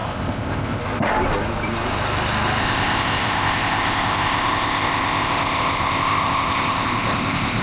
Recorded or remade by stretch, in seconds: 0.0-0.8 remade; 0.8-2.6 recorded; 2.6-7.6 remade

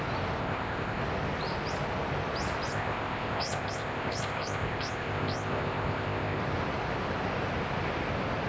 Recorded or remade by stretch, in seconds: 0.0-0.4 recorded; 0.4-1.0 remade; 1.0-2.7 recorded; 2.7-6.4 remade; 6.4-8.5 recorded

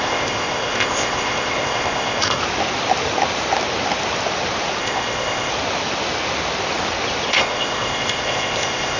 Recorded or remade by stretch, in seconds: 0.0-2.4 remade; 2.4-4.8 recorded; 4.8-5.5 remade; 5.5-7.3 recorded; 7.3-9.0 remade

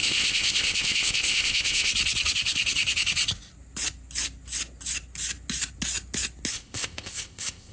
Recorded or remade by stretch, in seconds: 0.0-1.9 remade; 1.9-6.5 recorded; 6.5-7.7 remade

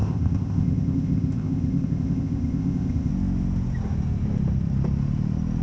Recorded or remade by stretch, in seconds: 0.0-3.1 remade; 3.1-5.6 recorded